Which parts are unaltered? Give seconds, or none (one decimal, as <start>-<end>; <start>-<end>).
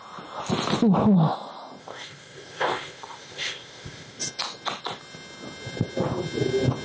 0.0-1.8; 4.2-6.8